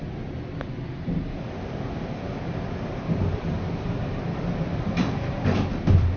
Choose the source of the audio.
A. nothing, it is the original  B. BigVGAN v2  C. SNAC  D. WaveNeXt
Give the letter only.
B